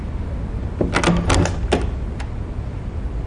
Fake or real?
real